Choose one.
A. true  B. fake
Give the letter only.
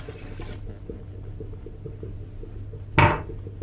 A